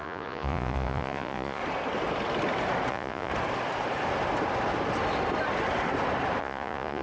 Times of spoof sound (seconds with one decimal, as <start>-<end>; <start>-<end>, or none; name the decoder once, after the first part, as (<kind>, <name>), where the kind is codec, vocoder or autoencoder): 0.0-1.6 (vocoder, Vocos); 2.9-3.3; 6.4-7.0